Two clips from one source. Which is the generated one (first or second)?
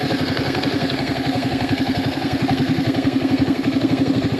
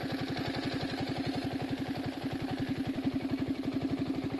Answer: first